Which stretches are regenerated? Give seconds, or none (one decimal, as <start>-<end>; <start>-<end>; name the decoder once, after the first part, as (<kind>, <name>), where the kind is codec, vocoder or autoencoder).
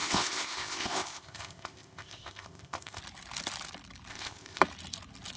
0.0-3.0 (codec, ZipCodec); 4.1-4.6